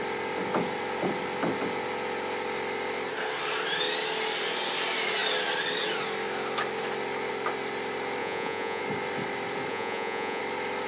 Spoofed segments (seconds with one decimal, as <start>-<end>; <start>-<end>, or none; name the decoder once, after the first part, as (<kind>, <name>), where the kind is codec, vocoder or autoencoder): 8.2-8.8 (vocoder, Vocos); 9.7-10.4